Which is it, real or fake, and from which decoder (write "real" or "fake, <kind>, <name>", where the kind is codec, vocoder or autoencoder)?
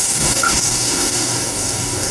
fake, codec, DAC